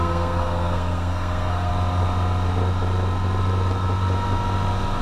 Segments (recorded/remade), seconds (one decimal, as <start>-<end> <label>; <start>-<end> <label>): 0.0-1.7 remade; 1.7-5.0 recorded